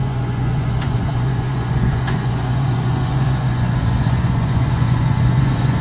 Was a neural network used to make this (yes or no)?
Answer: yes